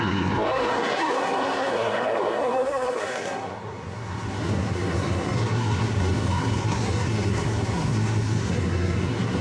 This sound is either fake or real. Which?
fake